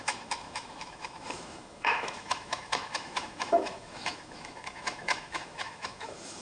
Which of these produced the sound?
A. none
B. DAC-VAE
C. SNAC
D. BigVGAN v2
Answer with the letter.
B